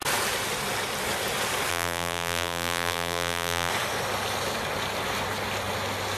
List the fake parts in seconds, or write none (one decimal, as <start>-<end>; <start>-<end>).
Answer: 1.7-3.7